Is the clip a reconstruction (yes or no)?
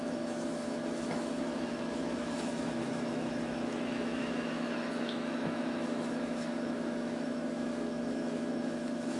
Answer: yes